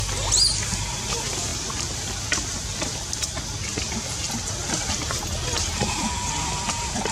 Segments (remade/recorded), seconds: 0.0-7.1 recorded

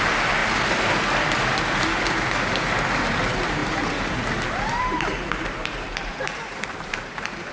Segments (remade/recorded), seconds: 0.0-0.4 remade; 0.4-3.0 recorded; 3.0-7.5 remade

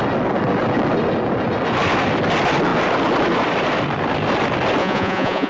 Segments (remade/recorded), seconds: 0.0-4.8 recorded; 4.8-5.5 remade